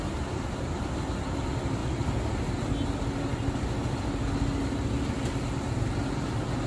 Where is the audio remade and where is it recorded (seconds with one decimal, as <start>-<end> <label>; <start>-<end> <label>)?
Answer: 0.0-6.7 recorded